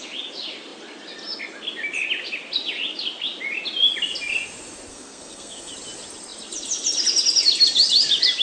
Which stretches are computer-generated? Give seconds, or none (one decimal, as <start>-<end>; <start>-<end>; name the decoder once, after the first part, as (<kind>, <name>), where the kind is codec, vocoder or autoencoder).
4.9-5.7 (codec, SNAC)